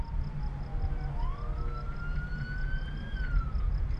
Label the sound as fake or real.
real